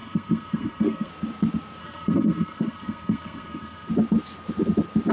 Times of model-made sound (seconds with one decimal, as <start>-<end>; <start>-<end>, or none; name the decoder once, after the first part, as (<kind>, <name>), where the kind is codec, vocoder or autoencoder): 0.0-1.1 (codec, SNAC); 1.8-3.9